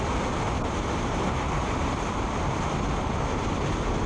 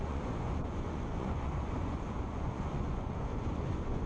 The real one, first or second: first